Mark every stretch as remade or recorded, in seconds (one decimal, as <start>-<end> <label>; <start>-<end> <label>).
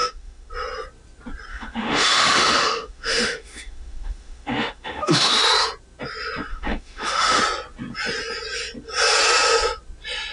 0.0-0.5 remade; 0.5-1.5 recorded; 1.5-5.3 remade; 5.3-6.5 recorded; 6.5-7.4 remade; 7.4-10.3 recorded